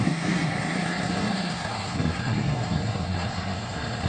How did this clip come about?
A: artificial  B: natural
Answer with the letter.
A